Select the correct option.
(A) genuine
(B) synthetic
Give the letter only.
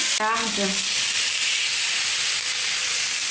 A